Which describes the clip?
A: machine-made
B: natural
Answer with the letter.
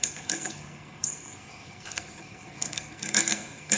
A